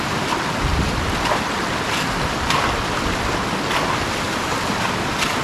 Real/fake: real